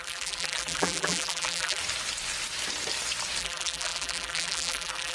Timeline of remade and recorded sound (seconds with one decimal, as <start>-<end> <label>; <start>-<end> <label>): 0.0-1.8 remade; 1.8-3.4 recorded; 3.4-5.1 remade